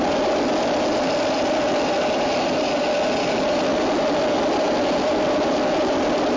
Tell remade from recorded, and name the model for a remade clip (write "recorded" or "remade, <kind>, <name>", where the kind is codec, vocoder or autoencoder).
recorded